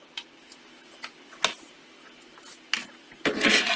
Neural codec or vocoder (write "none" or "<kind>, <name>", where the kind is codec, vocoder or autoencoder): none